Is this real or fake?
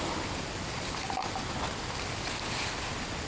real